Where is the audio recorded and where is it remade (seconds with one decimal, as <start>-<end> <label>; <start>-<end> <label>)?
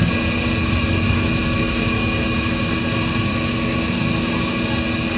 0.0-0.6 recorded; 0.6-2.7 remade; 2.7-3.3 recorded; 3.3-4.5 remade; 4.5-5.2 recorded